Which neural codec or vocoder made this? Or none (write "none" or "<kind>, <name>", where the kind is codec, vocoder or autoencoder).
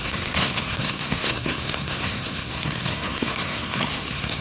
codec, SNAC